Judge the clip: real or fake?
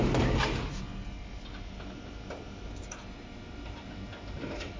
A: real